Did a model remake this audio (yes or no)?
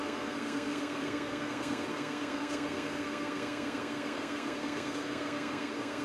yes